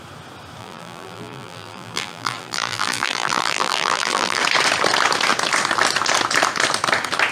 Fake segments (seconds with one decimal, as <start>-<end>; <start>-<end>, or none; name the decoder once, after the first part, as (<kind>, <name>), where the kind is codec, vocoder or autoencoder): 0.6-4.4 (vocoder, BigVGAN v2)